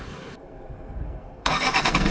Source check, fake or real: fake